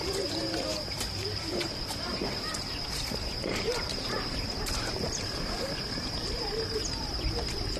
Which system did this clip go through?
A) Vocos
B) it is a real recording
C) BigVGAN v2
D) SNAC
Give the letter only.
C